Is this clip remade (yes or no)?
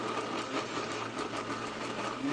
no